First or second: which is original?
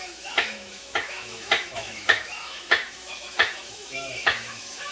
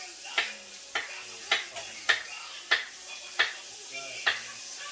second